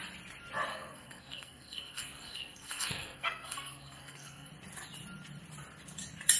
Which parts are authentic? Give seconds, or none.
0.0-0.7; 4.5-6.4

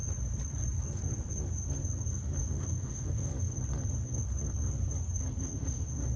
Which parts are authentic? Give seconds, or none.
0.0-2.4; 3.3-5.4